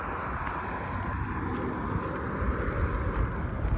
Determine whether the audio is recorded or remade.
recorded